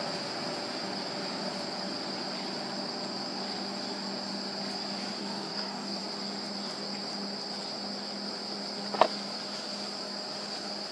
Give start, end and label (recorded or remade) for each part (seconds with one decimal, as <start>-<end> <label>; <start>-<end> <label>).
0.0-5.2 recorded; 5.2-6.0 remade; 6.0-10.9 recorded